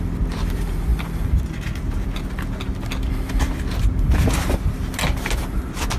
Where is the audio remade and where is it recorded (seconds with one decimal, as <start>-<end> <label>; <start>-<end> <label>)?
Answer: 0.0-6.0 recorded